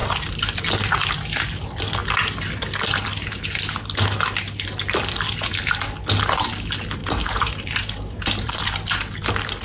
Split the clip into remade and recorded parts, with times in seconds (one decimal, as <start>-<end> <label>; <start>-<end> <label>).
0.0-7.0 recorded; 7.0-8.6 remade; 8.6-9.6 recorded